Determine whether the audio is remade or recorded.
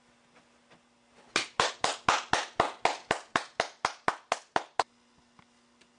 recorded